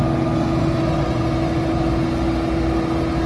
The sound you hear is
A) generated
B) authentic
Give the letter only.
B